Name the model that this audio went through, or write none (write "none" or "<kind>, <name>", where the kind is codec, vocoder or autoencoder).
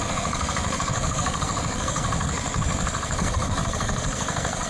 codec, SNAC